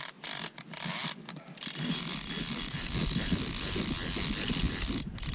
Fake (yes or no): no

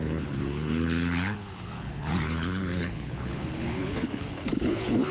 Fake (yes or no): yes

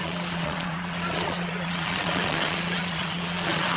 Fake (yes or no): yes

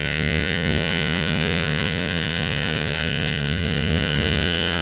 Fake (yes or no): yes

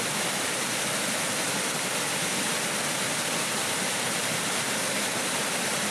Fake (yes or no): no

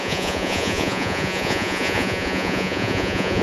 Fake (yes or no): yes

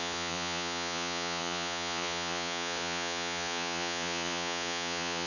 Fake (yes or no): yes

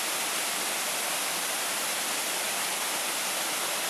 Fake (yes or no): yes